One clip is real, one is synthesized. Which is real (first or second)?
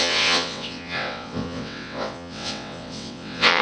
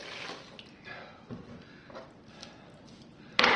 second